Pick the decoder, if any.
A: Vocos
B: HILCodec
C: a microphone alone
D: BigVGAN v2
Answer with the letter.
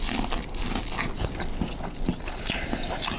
C